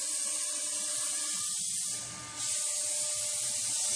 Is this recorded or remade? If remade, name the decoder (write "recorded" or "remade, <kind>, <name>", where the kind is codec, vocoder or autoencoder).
recorded